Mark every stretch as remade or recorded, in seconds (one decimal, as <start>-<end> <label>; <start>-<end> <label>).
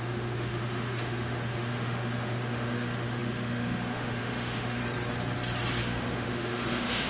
0.0-4.8 remade; 4.8-5.8 recorded; 5.8-7.1 remade